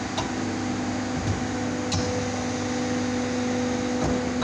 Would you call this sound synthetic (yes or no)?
no